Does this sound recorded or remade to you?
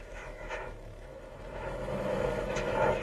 remade